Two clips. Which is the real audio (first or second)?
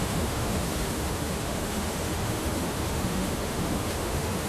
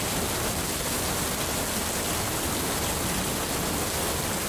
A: second